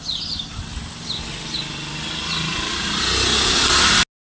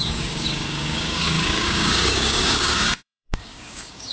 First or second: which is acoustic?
first